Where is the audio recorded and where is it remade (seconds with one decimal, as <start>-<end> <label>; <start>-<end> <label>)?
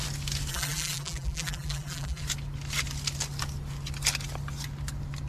0.0-0.5 recorded; 0.5-2.2 remade; 2.2-5.3 recorded